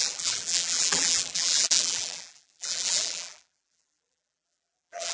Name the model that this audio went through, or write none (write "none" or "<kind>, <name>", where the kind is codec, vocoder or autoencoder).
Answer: vocoder, BigVGAN v2